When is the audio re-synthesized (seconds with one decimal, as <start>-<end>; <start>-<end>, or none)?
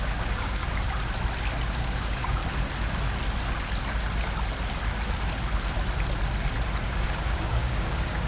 0.0-0.6; 1.8-2.4; 6.9-8.3